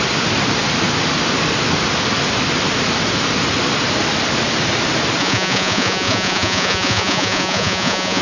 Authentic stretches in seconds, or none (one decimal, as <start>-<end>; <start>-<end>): 0.0-5.2

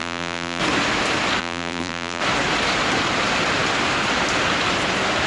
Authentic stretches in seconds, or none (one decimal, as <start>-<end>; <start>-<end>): 0.6-1.4; 2.2-5.3

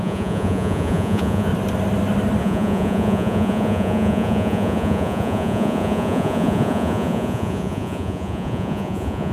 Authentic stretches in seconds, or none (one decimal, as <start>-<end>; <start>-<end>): 1.5-2.4